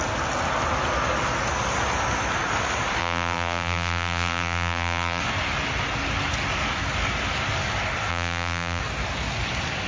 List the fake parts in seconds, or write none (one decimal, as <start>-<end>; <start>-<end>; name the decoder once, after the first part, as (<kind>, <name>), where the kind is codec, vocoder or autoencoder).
3.0-5.2 (vocoder, BigVGAN v2); 8.1-8.8